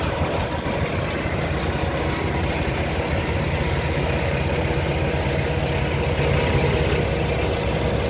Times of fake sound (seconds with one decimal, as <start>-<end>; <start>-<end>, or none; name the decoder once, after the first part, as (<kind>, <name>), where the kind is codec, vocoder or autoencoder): 1.9-4.6 (vocoder, BigVGAN v2)